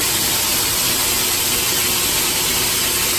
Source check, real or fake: real